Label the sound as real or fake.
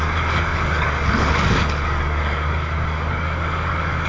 fake